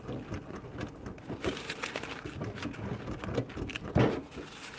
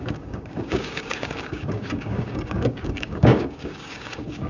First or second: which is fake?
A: second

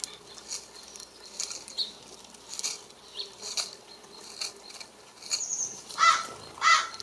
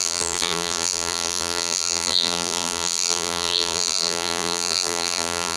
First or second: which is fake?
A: second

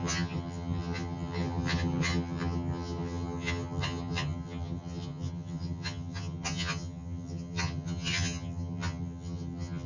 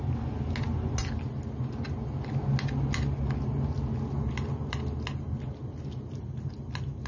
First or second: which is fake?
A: first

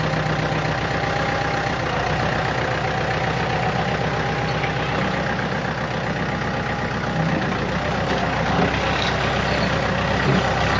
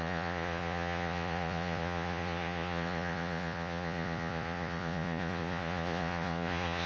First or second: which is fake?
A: second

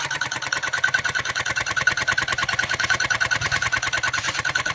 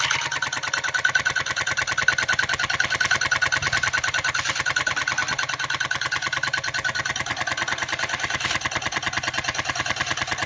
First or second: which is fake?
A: first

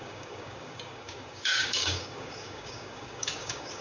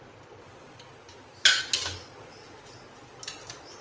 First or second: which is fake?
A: first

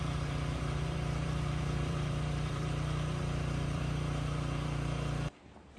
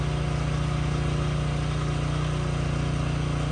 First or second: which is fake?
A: first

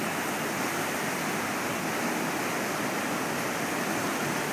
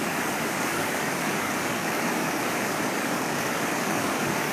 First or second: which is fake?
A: second